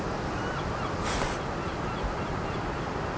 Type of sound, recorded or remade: recorded